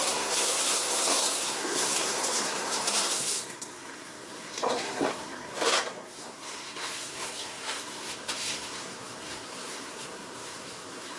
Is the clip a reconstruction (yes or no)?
yes